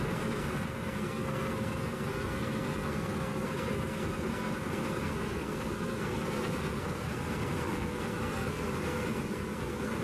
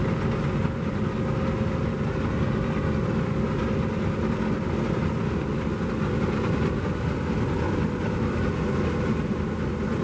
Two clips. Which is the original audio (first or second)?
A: second